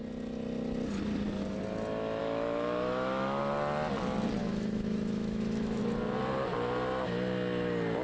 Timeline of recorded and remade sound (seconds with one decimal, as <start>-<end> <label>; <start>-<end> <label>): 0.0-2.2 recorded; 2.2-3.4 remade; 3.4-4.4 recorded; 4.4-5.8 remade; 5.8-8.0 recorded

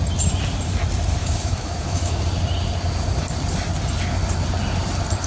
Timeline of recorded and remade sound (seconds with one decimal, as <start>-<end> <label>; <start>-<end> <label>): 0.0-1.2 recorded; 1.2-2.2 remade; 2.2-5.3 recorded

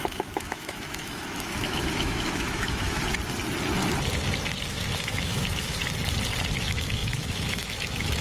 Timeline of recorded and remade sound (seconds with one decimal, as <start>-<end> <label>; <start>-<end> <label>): 0.0-3.0 remade; 3.0-4.7 recorded; 4.7-5.8 remade; 5.8-6.6 recorded; 6.6-8.2 remade